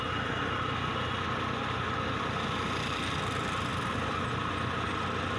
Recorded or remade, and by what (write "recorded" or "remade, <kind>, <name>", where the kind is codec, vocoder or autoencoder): recorded